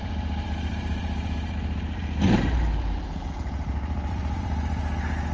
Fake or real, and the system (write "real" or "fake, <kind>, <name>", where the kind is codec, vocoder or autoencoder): fake, vocoder, BigVGAN v2